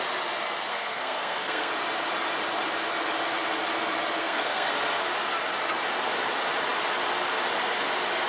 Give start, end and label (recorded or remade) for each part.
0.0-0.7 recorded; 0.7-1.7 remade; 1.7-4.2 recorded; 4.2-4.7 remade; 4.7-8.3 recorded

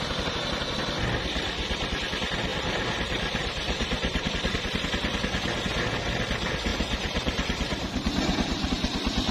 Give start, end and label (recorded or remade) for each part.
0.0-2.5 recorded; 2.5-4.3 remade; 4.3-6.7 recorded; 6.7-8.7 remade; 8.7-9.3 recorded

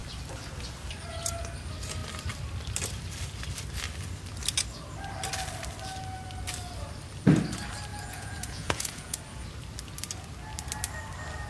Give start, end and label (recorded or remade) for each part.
0.0-7.9 recorded; 7.9-9.2 remade; 9.2-11.5 recorded

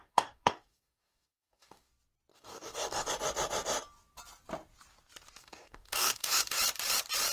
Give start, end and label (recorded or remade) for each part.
0.0-1.9 remade; 1.9-2.3 recorded; 2.3-3.1 remade; 3.1-5.4 recorded; 5.4-6.6 remade; 6.6-7.3 recorded

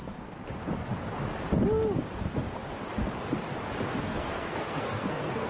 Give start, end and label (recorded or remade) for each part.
0.0-4.1 recorded; 4.1-5.5 remade

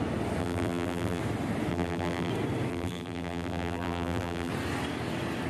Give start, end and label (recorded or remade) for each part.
0.0-0.4 recorded; 0.4-1.2 remade; 1.2-1.7 recorded; 1.7-2.3 remade; 2.3-2.7 recorded; 2.7-4.5 remade; 4.5-5.5 recorded

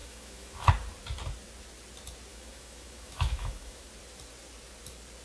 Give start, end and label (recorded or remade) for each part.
0.0-0.7 remade; 0.7-2.3 recorded; 2.3-3.9 remade; 3.9-5.2 recorded

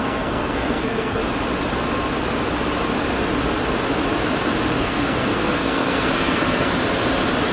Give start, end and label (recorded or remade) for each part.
0.0-1.2 remade; 1.2-4.8 recorded; 4.8-6.7 remade; 6.7-7.5 recorded